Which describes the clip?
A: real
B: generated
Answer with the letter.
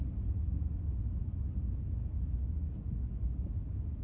A